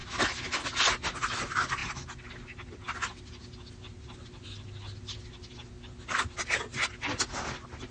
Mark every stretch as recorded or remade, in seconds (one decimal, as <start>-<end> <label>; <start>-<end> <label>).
0.0-7.9 recorded